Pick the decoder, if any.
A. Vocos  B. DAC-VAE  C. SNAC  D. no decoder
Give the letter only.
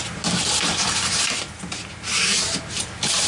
D